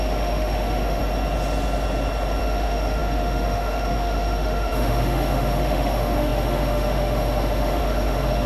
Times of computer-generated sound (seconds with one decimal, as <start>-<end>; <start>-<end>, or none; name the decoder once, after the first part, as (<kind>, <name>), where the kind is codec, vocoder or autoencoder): 0.0-1.0 (autoencoder, DAC-VAE); 2.4-8.5